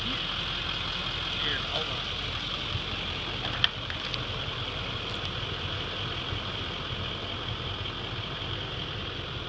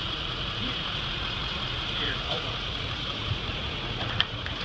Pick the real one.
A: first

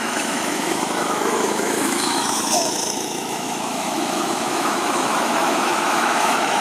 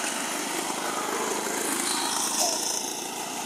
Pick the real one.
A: second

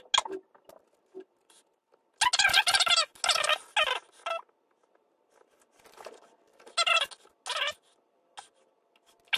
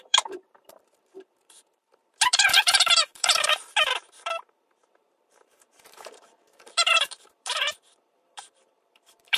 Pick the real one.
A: first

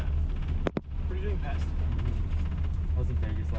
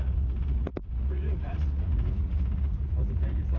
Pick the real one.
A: first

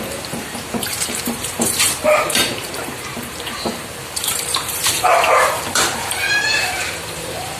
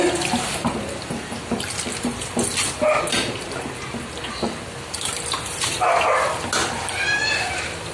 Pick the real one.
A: second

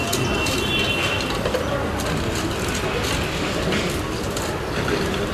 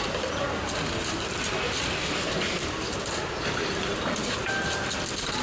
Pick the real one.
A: first